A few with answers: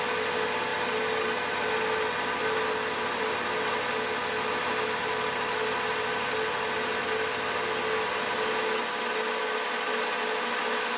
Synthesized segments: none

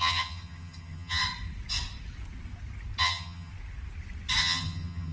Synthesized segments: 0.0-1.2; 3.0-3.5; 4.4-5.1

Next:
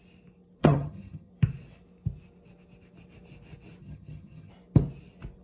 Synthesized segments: 0.6-1.3; 3.8-4.5

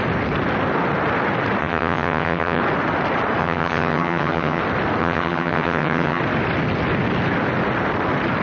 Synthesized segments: 1.6-2.6; 3.4-4.6; 5.0-6.2

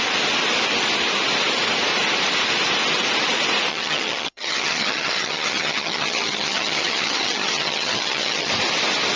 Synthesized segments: 3.7-8.5

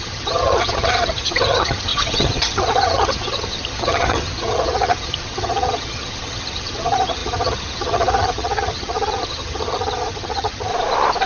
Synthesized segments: 0.0-10.7